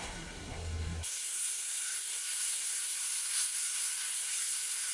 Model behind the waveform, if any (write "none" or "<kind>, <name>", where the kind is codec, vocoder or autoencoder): codec, SNAC